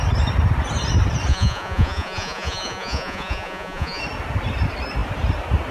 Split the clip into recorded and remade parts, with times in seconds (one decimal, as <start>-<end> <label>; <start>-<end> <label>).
0.0-1.3 recorded; 1.3-4.0 remade; 4.0-5.7 recorded